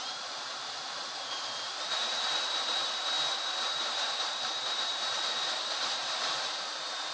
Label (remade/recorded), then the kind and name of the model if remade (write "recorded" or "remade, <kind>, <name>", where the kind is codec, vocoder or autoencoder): remade, vocoder, BigVGAN v2